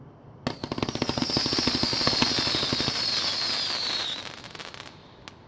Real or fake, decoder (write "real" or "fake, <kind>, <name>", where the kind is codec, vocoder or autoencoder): real